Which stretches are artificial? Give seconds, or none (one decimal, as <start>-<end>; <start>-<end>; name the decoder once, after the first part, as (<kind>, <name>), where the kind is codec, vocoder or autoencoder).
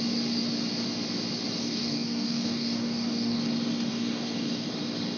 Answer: 1.6-3.4 (codec, DAC); 3.9-4.7